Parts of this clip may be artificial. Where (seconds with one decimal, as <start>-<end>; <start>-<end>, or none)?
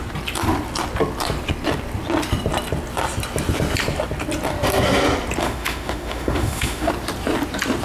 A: 5.4-6.9